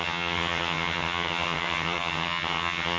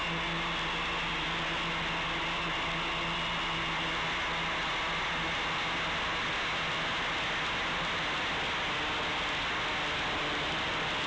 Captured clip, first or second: second